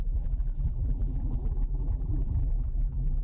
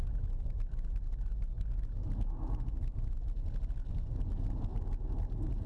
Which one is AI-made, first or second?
first